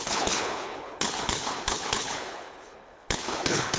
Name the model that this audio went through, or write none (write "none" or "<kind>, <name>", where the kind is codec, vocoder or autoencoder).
codec, HILCodec